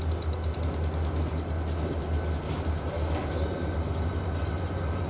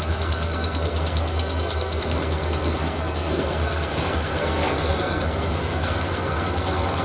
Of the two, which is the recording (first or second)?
first